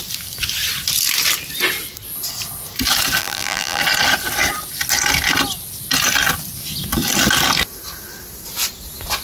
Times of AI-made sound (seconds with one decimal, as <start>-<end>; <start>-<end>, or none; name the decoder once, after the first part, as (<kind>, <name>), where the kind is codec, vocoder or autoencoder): 3.2-3.8 (vocoder, BigVGAN v2)